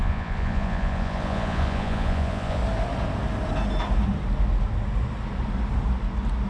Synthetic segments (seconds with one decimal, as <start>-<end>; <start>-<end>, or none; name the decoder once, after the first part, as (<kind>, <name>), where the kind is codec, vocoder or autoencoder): 0.0-2.6 (vocoder, Vocos)